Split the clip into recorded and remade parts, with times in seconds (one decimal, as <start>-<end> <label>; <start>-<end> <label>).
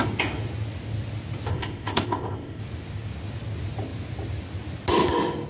0.0-1.5 recorded; 1.5-2.6 remade; 2.6-5.5 recorded